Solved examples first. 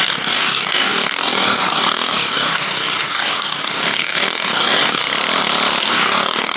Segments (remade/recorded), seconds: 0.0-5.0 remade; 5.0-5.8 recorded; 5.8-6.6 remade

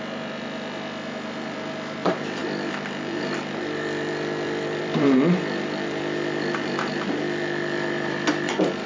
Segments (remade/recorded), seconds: 0.0-8.9 remade

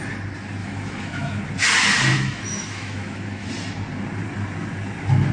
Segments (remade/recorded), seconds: 0.0-0.6 recorded; 0.6-1.4 remade; 1.4-2.1 recorded; 2.1-3.5 remade; 3.5-5.3 recorded

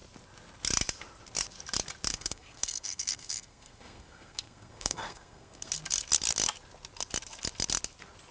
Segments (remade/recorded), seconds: 0.0-2.1 recorded; 2.1-5.7 remade; 5.7-8.3 recorded

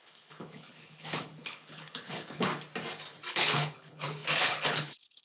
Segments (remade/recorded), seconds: 0.0-2.5 remade; 2.5-3.3 recorded; 3.3-5.2 remade

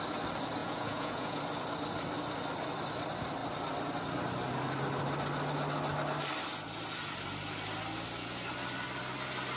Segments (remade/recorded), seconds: 0.0-0.6 recorded; 0.6-1.4 remade; 1.4-9.6 recorded

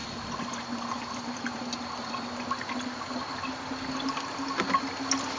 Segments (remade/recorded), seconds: 0.0-5.4 recorded

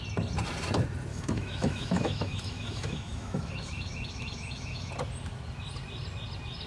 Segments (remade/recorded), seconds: 0.0-1.1 recorded; 1.1-4.9 remade; 4.9-6.7 recorded